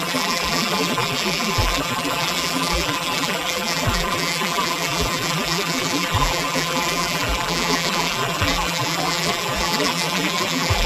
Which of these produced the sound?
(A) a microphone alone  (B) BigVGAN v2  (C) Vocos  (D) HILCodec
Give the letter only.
B